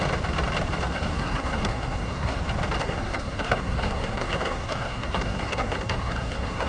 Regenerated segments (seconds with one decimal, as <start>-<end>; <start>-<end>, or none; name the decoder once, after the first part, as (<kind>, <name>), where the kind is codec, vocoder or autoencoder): 0.9-2.4 (codec, SNAC); 2.8-6.7